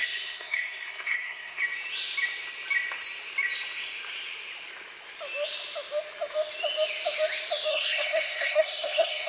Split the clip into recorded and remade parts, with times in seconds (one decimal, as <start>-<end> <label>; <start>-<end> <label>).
0.0-1.6 remade; 1.6-7.7 recorded; 7.7-9.3 remade